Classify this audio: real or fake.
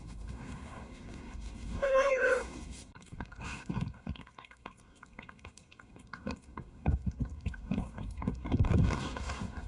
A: fake